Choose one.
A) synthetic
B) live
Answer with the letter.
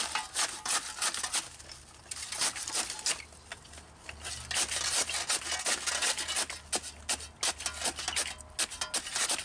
B